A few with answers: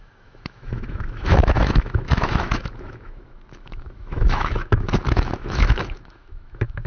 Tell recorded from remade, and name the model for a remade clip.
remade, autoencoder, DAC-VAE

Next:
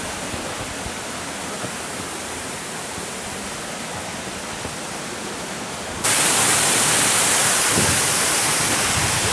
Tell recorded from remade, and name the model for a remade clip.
recorded